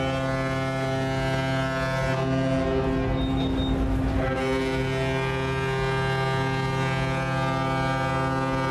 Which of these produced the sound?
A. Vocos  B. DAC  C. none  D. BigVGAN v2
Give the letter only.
C